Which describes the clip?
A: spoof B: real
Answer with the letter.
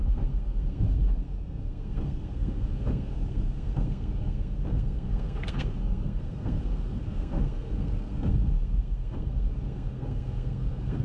A